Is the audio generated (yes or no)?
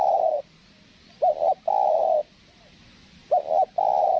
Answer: no